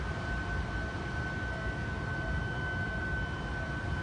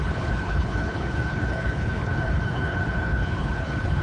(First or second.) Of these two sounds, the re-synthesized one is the second